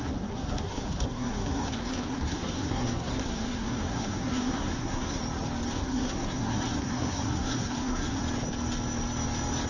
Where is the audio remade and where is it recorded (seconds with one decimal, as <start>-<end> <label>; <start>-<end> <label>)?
0.0-5.2 remade; 5.2-5.7 recorded; 5.7-8.2 remade; 8.2-9.7 recorded